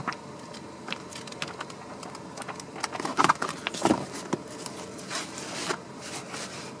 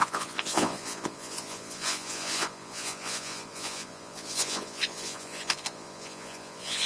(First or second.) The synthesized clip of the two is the second